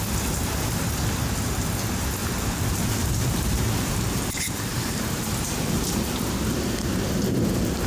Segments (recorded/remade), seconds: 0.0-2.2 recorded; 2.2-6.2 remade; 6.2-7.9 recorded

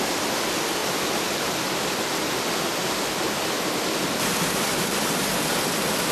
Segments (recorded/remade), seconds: 0.0-6.1 recorded

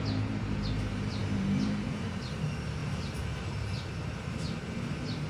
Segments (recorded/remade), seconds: 0.0-5.3 remade

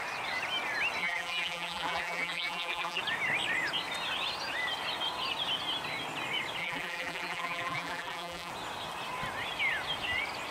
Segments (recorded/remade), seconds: 0.0-1.0 recorded; 1.0-3.0 remade; 3.0-6.6 recorded; 6.6-8.5 remade; 8.5-10.5 recorded

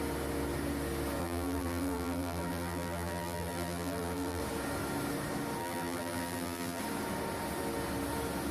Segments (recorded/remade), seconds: 0.0-1.2 recorded; 1.2-4.4 remade; 4.4-5.6 recorded; 5.6-6.8 remade; 6.8-8.5 recorded

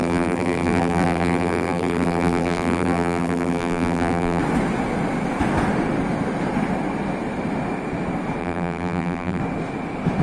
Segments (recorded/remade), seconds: 0.0-4.4 remade; 4.4-8.4 recorded; 8.4-9.4 remade; 9.4-10.2 recorded

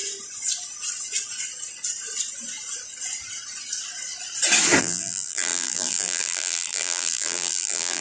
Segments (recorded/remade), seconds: 0.0-4.8 recorded; 4.8-8.0 remade